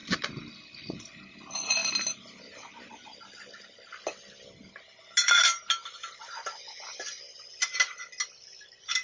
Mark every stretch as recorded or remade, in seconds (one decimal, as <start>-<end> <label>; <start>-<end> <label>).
0.0-9.0 recorded